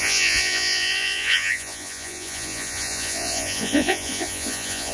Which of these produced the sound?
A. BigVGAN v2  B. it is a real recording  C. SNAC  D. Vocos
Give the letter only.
D